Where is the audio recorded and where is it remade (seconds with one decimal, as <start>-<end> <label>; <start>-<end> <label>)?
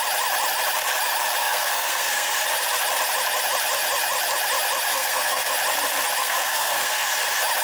0.0-1.4 recorded; 1.4-2.3 remade; 2.3-4.9 recorded; 4.9-5.5 remade; 5.5-6.2 recorded; 6.2-7.1 remade; 7.1-7.6 recorded